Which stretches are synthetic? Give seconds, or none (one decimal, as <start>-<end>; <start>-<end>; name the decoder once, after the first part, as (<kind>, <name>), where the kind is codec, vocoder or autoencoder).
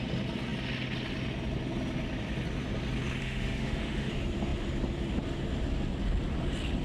3.2-4.1 (autoencoder, DAC-VAE)